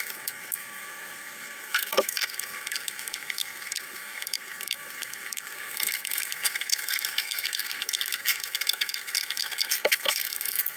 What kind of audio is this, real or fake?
fake